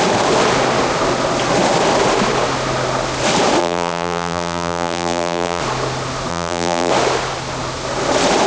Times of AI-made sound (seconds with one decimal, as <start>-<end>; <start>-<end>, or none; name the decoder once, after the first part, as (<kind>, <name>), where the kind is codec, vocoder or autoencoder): 3.6-5.6 (vocoder, BigVGAN v2); 6.3-6.9